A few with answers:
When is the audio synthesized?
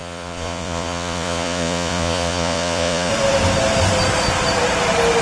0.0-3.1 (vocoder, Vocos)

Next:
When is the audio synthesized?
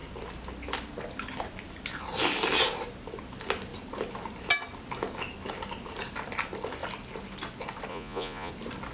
7.9-8.5 (vocoder, Vocos)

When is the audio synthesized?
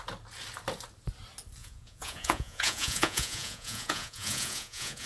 1.6-5.1 (vocoder, Vocos)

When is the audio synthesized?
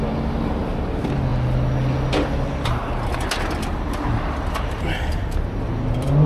none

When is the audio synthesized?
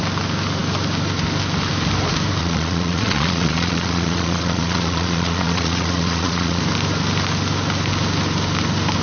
2.4-6.6 (vocoder, Vocos)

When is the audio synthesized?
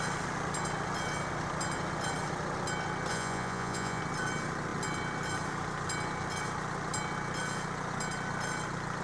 3.1-4.0 (vocoder, Vocos)